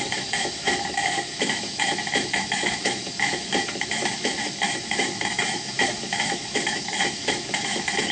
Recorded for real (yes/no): no